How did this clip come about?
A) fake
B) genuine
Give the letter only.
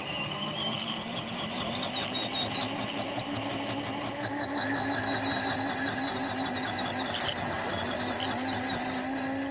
B